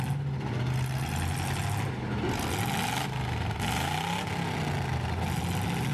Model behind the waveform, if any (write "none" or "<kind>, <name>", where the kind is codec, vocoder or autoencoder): none